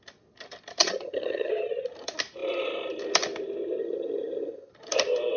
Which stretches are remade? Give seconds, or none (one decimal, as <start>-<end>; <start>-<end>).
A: 0.8-1.5; 3.8-4.7